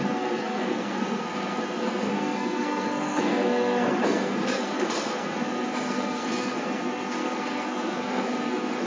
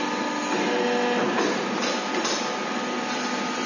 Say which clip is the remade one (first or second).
first